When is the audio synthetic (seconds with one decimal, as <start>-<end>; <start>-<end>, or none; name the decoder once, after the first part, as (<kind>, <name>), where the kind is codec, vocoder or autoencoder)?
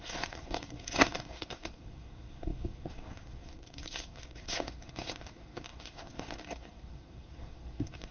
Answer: 0.0-8.1 (codec, SNAC)